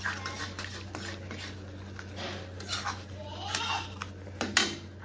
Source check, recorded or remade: recorded